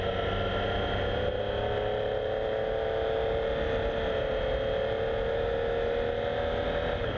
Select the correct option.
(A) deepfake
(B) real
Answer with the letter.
B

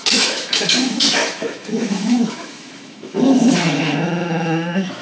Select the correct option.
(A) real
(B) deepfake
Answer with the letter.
B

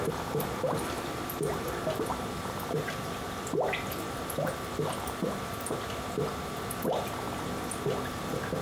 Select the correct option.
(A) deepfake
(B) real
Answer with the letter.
A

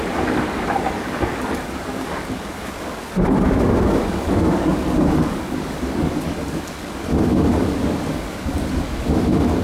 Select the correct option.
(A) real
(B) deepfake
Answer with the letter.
B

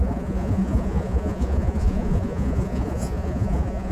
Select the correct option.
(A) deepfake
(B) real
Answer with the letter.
A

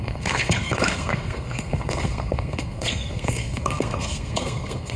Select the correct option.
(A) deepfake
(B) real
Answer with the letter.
A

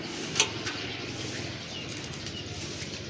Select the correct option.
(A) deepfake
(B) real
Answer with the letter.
B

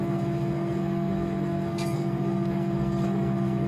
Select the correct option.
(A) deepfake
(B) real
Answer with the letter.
A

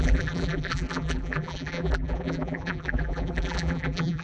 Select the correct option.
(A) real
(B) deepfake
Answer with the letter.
B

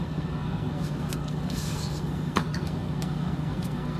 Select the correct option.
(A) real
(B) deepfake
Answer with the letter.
B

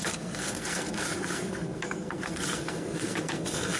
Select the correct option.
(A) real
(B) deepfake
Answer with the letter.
B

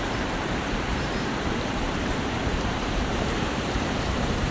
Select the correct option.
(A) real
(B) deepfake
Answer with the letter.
B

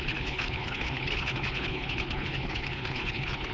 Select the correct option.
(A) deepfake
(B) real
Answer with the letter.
A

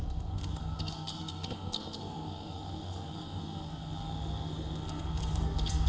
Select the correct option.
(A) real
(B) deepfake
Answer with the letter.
B